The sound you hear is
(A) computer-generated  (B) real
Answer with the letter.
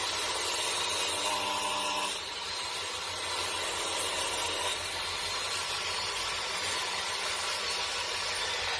B